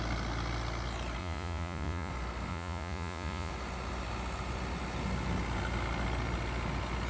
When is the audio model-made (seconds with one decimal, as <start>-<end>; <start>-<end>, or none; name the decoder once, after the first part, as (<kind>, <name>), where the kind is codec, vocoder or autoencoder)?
1.2-2.1 (vocoder, Vocos); 2.5-3.5